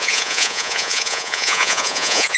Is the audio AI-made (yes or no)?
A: yes